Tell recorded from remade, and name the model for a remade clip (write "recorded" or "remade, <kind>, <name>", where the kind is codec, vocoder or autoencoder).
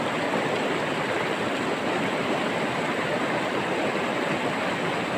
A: recorded